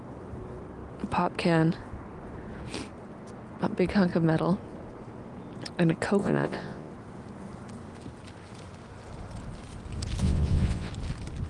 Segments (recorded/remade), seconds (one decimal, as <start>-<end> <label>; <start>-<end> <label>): 0.0-6.2 recorded; 6.2-6.9 remade; 6.9-10.2 recorded; 10.2-10.9 remade; 10.9-11.5 recorded